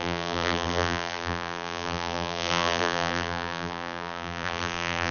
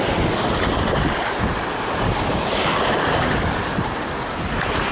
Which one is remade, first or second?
first